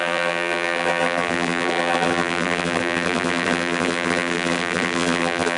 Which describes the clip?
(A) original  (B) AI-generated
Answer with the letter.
B